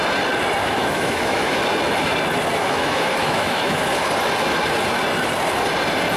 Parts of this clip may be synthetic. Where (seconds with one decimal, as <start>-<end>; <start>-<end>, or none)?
0.6-1.6; 2.6-3.8